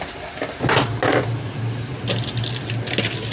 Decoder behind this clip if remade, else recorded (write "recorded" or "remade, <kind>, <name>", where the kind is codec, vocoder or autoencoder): recorded